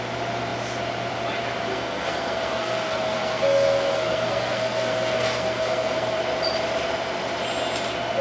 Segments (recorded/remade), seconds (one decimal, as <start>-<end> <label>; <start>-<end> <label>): 0.0-1.7 recorded; 1.7-6.2 remade; 6.2-8.2 recorded